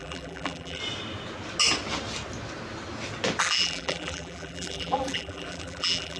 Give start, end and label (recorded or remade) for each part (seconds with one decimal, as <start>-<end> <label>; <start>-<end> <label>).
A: 0.0-0.8 remade; 0.8-3.4 recorded; 3.4-6.2 remade

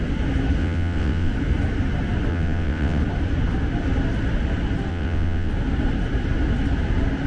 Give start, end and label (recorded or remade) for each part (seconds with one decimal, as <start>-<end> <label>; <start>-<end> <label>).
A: 0.0-0.6 recorded; 0.6-1.3 remade; 1.3-2.3 recorded; 2.3-3.0 remade; 3.0-4.9 recorded; 4.9-5.5 remade; 5.5-7.3 recorded

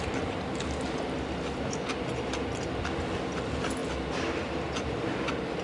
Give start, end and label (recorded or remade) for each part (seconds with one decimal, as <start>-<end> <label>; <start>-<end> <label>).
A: 0.0-5.6 recorded

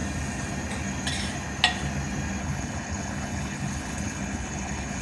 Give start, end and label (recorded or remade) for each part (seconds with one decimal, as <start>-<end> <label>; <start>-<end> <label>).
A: 0.0-2.4 recorded; 2.4-5.0 remade

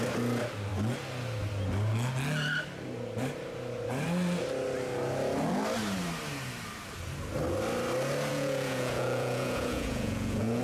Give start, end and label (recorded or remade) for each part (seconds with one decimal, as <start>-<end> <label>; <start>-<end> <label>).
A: 0.0-8.3 recorded; 8.3-10.6 remade

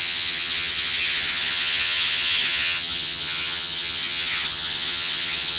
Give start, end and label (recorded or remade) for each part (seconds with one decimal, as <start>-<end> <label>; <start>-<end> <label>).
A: 0.0-5.6 remade